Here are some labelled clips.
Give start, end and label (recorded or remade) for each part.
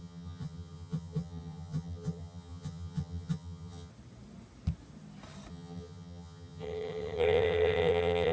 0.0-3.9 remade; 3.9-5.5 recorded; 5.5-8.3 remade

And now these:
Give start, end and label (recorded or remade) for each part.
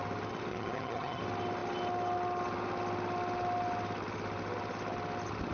0.0-0.5 recorded; 0.5-1.2 remade; 1.2-5.5 recorded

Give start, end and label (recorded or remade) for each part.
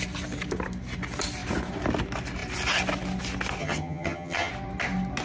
0.0-3.6 recorded; 3.6-4.5 remade; 4.5-5.2 recorded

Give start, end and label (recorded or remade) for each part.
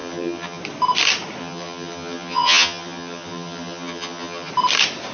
0.0-0.6 remade; 0.6-1.4 recorded; 1.4-4.5 remade; 4.5-5.1 recorded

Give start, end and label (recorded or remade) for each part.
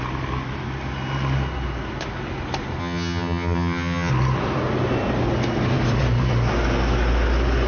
0.0-2.8 recorded; 2.8-4.1 remade; 4.1-7.7 recorded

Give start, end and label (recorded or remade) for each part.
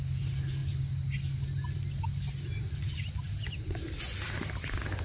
0.0-5.0 recorded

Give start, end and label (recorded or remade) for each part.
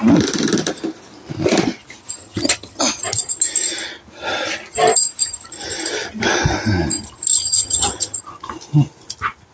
0.0-2.2 recorded; 2.2-2.8 remade; 2.8-7.3 recorded; 7.3-8.2 remade; 8.2-9.5 recorded